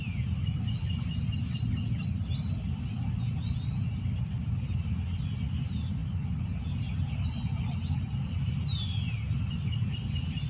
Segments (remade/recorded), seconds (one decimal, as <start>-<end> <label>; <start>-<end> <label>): 0.0-10.5 recorded